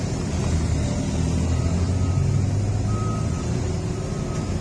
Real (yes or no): yes